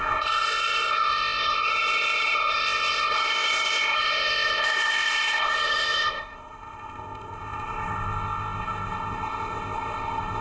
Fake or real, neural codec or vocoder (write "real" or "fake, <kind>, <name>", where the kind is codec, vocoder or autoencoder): fake, codec, ZipCodec